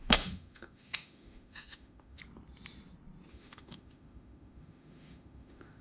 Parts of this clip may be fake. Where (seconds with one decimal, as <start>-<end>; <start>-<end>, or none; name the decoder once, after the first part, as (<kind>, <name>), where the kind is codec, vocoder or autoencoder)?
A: 0.0-2.2 (autoencoder, DAC-VAE); 3.3-5.8